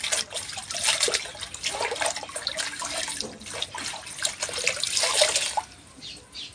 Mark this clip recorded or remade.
recorded